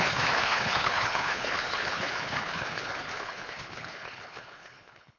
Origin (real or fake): fake